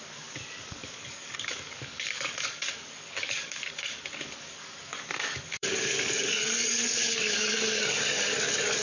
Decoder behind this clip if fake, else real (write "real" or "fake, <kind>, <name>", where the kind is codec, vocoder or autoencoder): fake, codec, DAC